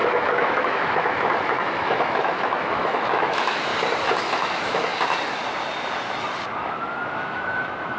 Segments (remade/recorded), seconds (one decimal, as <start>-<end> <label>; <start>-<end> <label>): 0.0-3.7 remade; 3.7-4.2 recorded; 4.2-4.9 remade; 4.9-6.6 recorded; 6.6-8.0 remade